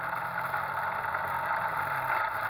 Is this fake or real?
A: real